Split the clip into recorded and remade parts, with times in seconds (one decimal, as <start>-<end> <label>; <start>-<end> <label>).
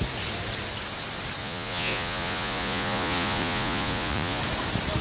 0.0-1.4 recorded; 1.4-4.4 remade; 4.4-5.0 recorded